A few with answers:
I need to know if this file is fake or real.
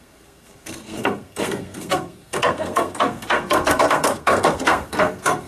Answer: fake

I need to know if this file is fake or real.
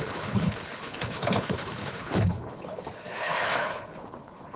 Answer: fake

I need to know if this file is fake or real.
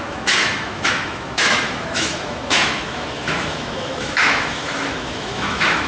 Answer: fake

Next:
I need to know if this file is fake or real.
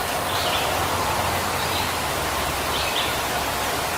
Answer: fake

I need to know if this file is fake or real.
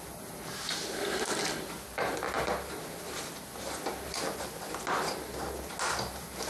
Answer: real